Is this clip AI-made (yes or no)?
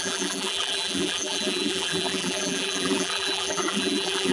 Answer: yes